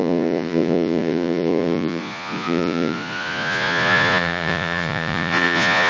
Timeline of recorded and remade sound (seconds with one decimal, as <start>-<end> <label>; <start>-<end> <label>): 0.0-5.9 remade

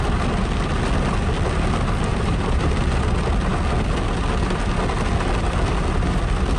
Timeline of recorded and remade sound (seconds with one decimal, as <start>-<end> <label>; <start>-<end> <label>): 0.0-2.1 recorded; 2.1-2.7 remade; 2.7-6.6 recorded

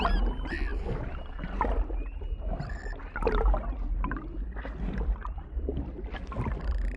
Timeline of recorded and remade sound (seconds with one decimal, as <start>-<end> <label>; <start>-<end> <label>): 0.0-7.0 recorded

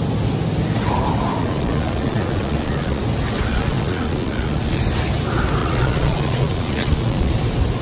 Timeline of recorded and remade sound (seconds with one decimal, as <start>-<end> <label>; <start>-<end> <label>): 0.0-1.4 recorded; 1.4-3.0 remade; 3.0-3.5 recorded; 3.5-4.8 remade; 4.8-5.6 recorded; 5.6-7.3 remade; 7.3-7.8 recorded

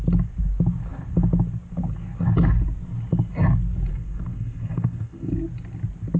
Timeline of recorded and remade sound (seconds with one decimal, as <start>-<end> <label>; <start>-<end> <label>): 0.0-3.9 recorded; 3.9-5.3 remade; 5.3-6.2 recorded